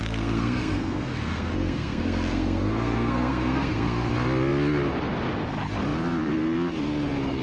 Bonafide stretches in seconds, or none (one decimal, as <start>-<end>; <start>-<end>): 4.1-7.4